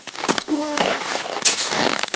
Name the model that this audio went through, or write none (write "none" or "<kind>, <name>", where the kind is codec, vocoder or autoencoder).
codec, DAC